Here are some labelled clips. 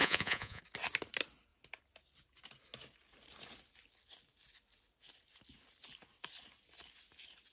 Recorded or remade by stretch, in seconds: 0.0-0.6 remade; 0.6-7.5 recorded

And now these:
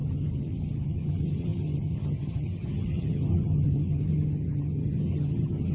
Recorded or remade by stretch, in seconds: 0.0-5.7 remade

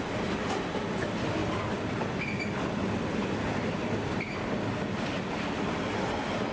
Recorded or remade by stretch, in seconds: 0.0-6.5 recorded

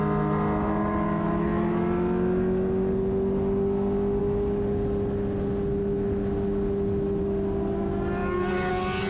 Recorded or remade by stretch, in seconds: 0.0-9.1 recorded

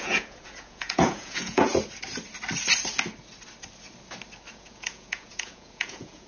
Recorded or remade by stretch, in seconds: 0.0-1.7 remade; 1.7-4.5 recorded; 4.5-6.3 remade

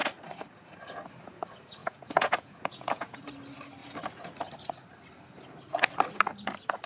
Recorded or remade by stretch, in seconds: 0.0-1.8 recorded; 1.8-3.2 remade; 3.2-6.9 recorded

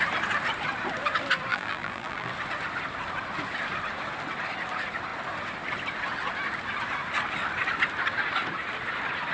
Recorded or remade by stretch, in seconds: 0.0-1.5 recorded; 1.5-2.3 remade; 2.3-9.3 recorded

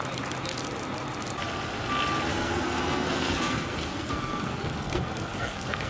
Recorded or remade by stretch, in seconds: 0.0-2.3 recorded; 2.3-5.9 remade